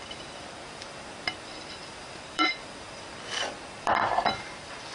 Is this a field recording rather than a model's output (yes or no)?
no